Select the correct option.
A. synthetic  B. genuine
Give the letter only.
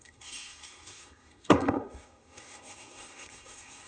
A